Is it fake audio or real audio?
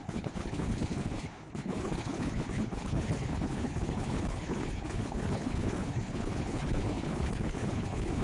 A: fake